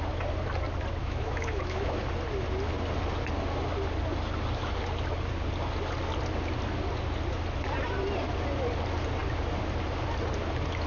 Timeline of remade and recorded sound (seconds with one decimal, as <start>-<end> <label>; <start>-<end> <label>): 0.0-1.0 recorded; 1.0-2.0 remade; 2.0-10.9 recorded

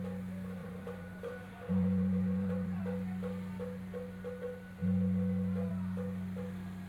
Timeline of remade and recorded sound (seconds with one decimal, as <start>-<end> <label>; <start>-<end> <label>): 0.0-0.6 recorded; 0.6-2.8 remade; 2.8-6.9 recorded

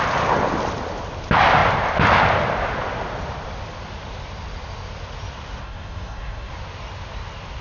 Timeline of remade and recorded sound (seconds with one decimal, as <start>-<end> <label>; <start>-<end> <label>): 0.0-5.6 recorded; 5.6-6.5 remade; 6.5-7.6 recorded

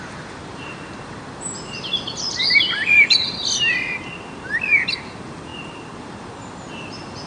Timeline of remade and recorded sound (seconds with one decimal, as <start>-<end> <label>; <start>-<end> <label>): 0.0-7.3 recorded

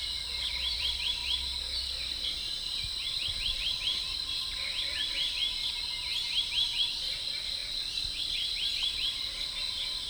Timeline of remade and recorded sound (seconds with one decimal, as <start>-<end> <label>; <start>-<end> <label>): 0.0-1.2 remade; 1.2-2.3 recorded; 2.3-5.4 remade; 5.4-6.4 recorded; 6.4-10.1 remade

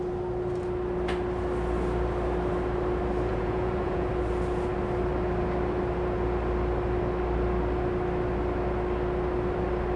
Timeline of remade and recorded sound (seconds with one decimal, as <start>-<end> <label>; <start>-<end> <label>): 0.0-3.3 recorded; 3.3-4.1 remade; 4.1-10.0 recorded

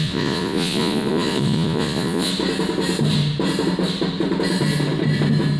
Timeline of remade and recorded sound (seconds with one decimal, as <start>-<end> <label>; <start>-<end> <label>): 0.0-2.3 remade; 2.3-5.6 recorded